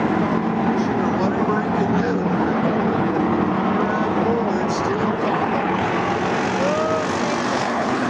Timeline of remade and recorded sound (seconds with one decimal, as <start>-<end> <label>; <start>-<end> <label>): 0.0-1.9 recorded; 1.9-3.2 remade; 3.2-4.9 recorded; 4.9-5.9 remade; 5.9-7.5 recorded; 7.5-8.1 remade